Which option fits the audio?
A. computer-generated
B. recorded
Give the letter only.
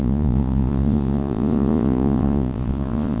A